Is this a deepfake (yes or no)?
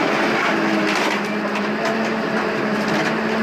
no